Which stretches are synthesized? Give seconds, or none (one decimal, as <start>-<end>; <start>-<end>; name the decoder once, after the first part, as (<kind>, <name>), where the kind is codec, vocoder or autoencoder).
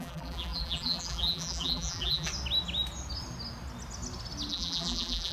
0.0-2.3 (vocoder, BigVGAN v2); 4.5-5.3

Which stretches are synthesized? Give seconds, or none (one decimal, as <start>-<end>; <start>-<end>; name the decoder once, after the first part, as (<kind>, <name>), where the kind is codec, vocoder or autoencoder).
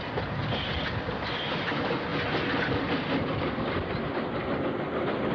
none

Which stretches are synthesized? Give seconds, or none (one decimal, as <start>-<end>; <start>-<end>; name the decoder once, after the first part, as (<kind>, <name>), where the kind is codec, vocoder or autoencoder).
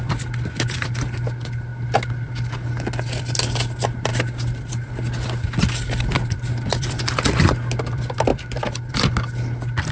none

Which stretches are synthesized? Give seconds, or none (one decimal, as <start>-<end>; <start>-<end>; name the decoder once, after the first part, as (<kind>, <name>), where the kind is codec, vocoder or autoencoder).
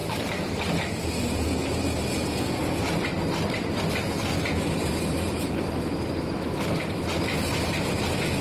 0.0-3.8 (vocoder, BigVGAN v2); 4.9-7.1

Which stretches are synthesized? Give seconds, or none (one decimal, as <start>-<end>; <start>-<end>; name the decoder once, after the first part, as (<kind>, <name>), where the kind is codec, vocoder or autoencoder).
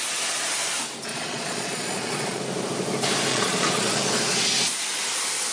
1.1-2.4 (vocoder, Vocos); 3.3-4.0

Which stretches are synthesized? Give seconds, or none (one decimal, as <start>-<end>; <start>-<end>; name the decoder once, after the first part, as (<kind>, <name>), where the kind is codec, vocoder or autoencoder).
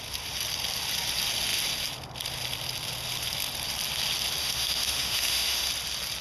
4.4-5.7 (autoencoder, DAC-VAE)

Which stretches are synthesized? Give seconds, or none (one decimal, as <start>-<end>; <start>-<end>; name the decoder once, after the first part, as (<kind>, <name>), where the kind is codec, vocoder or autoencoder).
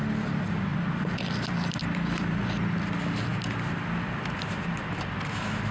0.7-2.6 (vocoder, BigVGAN v2)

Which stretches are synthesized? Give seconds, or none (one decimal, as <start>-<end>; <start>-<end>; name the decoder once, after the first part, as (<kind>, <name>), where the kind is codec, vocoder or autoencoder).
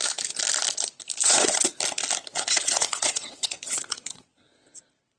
1.2-1.7 (vocoder, WaveNeXt); 2.3-4.7